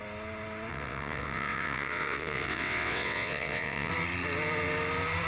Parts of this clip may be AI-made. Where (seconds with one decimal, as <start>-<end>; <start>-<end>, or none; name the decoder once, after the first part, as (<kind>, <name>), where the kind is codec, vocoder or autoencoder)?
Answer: 0.7-3.9 (vocoder, WaveNeXt)